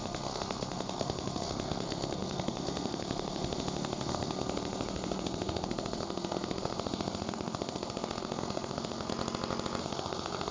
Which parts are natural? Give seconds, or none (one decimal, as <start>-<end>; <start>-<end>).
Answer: 9.1-9.8